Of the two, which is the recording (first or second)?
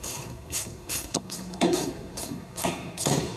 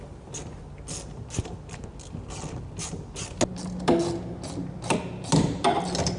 second